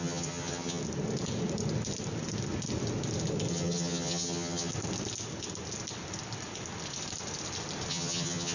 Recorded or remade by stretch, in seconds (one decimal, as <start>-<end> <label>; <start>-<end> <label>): 0.0-0.8 remade; 0.8-3.5 recorded; 3.5-4.7 remade; 4.7-7.9 recorded; 7.9-8.5 remade

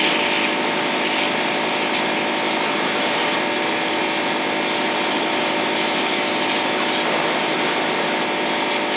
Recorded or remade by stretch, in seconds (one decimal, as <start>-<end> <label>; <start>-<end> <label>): 0.0-9.0 recorded

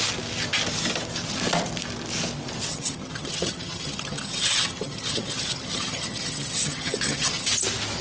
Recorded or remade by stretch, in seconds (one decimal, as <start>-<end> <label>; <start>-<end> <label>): 0.0-2.7 recorded; 2.7-7.5 remade; 7.5-8.0 recorded

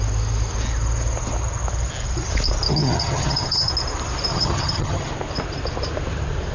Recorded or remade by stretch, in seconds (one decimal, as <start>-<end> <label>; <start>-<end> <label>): 0.0-2.8 recorded; 2.8-3.7 remade; 3.7-4.3 recorded; 4.3-5.0 remade; 5.0-6.5 recorded

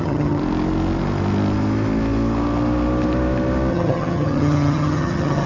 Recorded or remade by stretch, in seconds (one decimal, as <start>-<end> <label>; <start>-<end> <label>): 0.0-0.4 remade; 0.4-3.7 recorded; 3.7-5.5 remade

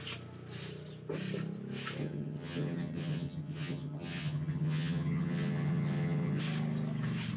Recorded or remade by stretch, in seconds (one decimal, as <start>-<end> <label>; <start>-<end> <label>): 0.0-2.0 recorded; 2.0-6.4 remade; 6.4-7.4 recorded

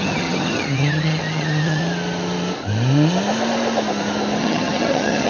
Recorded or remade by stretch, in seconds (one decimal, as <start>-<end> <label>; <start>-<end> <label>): 0.0-1.8 remade; 1.8-4.4 recorded; 4.4-5.3 remade